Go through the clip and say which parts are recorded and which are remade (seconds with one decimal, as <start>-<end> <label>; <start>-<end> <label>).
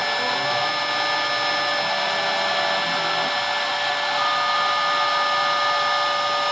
0.0-6.5 recorded